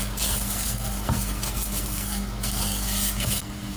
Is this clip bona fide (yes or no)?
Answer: no